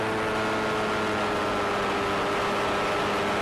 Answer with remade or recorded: remade